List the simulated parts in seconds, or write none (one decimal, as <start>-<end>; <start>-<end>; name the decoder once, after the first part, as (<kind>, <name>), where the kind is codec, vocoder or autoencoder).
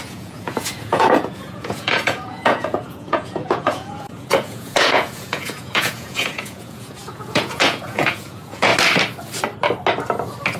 0.0-8.7 (vocoder, Vocos)